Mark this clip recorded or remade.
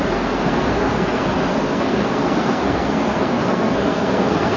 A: remade